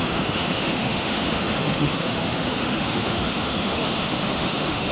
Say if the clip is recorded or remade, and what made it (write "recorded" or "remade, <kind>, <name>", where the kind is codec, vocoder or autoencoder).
remade, autoencoder, DAC-VAE